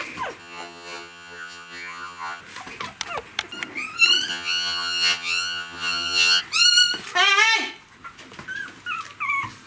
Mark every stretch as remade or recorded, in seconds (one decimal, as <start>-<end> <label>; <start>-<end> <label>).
0.0-0.4 recorded; 0.4-2.4 remade; 2.4-4.3 recorded; 4.3-6.4 remade; 6.4-9.7 recorded